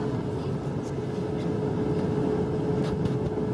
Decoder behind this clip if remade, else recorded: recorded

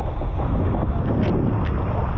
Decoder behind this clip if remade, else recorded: recorded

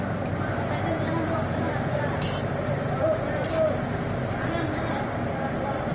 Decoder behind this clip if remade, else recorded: recorded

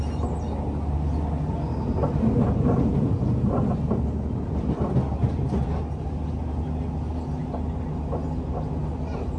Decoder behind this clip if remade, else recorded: recorded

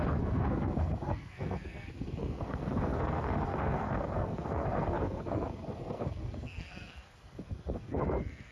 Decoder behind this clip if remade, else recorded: remade, codec, SNAC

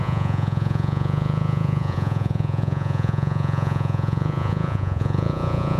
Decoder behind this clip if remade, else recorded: remade, vocoder, Vocos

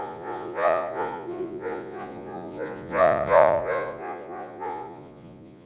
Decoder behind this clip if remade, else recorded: remade, vocoder, Vocos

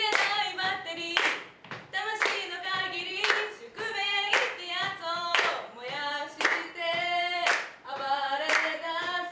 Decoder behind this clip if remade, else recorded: remade, vocoder, BigVGAN v2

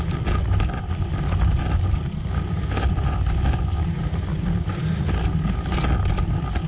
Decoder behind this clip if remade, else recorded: recorded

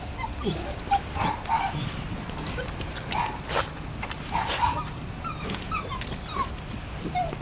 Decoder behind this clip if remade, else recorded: recorded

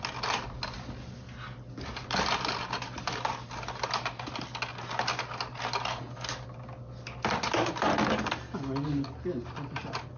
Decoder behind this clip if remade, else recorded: recorded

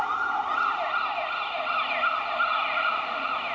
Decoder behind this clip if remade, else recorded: recorded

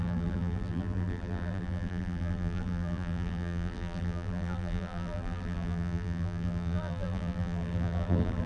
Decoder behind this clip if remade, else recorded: remade, vocoder, BigVGAN v2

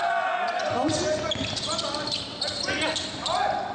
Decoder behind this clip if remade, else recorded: recorded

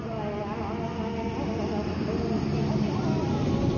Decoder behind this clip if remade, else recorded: recorded